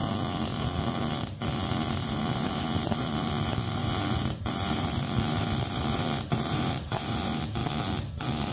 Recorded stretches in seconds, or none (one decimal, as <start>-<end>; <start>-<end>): 0.0-1.9; 7.6-8.5